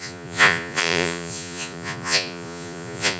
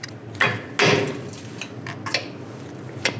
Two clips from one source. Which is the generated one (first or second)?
first